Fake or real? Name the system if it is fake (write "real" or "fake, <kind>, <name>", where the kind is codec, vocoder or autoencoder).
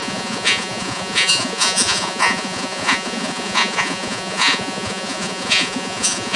fake, vocoder, Vocos